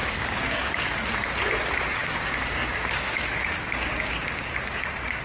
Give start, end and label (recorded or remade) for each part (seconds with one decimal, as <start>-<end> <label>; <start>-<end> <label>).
0.0-0.8 remade; 0.8-2.0 recorded; 2.0-5.2 remade